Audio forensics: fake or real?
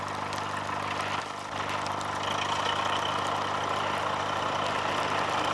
real